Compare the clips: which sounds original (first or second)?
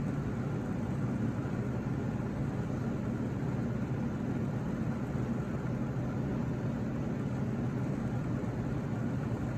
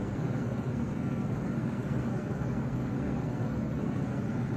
first